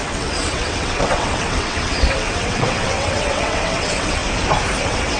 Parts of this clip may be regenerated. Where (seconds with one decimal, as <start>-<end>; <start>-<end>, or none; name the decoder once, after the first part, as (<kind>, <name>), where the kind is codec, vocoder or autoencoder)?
0.0-4.2 (vocoder, WaveNeXt); 4.8-5.2